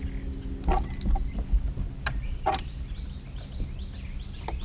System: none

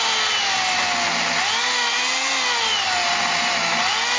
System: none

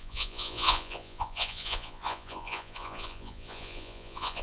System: vocoder, Vocos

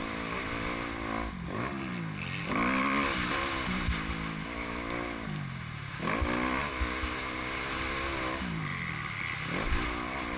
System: none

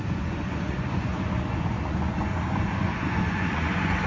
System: vocoder, Vocos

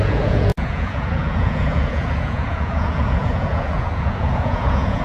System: vocoder, Vocos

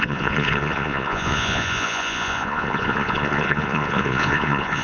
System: vocoder, Vocos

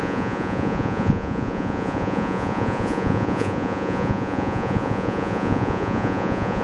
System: vocoder, Vocos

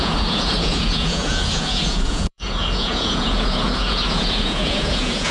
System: vocoder, Vocos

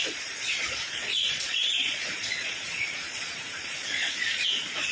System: vocoder, Vocos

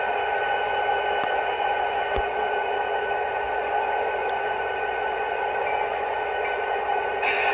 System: vocoder, Vocos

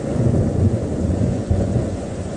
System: vocoder, Vocos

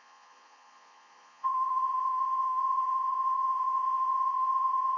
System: vocoder, Vocos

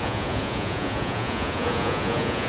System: vocoder, Vocos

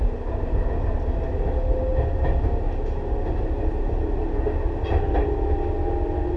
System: none